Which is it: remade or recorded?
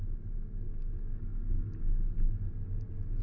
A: recorded